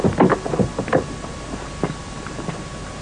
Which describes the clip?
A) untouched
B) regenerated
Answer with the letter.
A